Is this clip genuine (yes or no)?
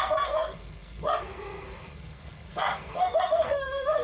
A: no